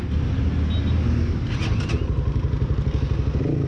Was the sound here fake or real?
real